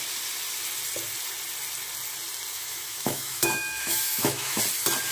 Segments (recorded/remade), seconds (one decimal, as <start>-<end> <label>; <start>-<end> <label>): 0.0-2.5 recorded; 2.5-4.6 remade; 4.6-5.1 recorded